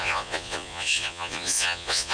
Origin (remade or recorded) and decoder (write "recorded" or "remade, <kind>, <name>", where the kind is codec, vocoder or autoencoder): remade, vocoder, Vocos